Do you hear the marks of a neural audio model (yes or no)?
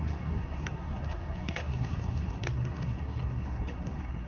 yes